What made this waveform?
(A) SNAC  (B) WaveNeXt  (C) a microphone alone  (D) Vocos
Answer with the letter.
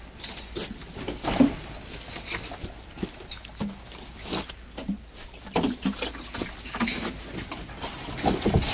C